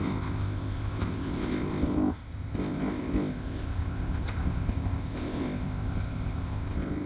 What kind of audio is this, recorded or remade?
remade